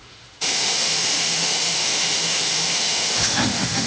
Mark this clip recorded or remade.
remade